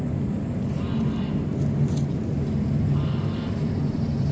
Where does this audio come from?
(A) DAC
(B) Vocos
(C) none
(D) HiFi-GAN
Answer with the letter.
C